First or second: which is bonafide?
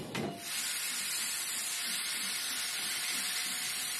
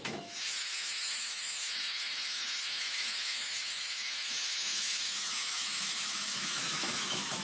first